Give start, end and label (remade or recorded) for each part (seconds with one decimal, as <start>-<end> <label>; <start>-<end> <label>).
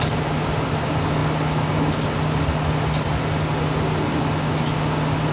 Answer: 0.0-5.3 recorded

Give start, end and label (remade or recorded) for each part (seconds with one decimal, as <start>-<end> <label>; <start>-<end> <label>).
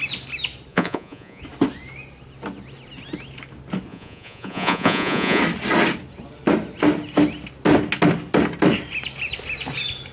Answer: 0.0-0.7 recorded; 0.7-1.4 remade; 1.4-3.9 recorded; 3.9-5.4 remade; 5.4-10.1 recorded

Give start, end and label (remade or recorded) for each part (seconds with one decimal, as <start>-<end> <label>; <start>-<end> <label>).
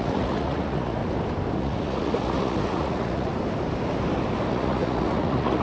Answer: 0.0-1.0 remade; 1.0-1.6 recorded; 1.6-3.3 remade; 3.3-4.5 recorded; 4.5-5.6 remade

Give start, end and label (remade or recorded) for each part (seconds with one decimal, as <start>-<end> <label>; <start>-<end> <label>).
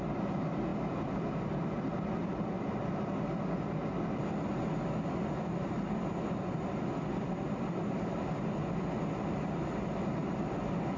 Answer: 0.0-11.0 recorded